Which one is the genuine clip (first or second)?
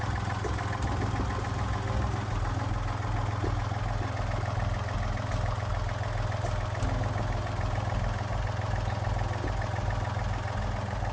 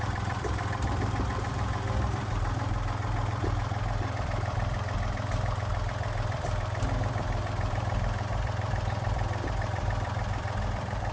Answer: first